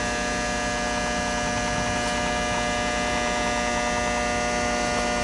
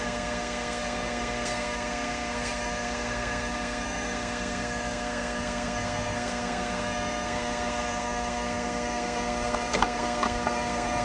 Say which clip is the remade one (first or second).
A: second